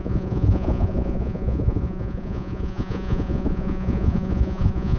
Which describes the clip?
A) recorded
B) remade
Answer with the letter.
B